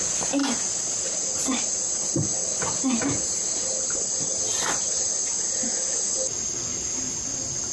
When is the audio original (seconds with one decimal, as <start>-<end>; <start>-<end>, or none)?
0.0-7.7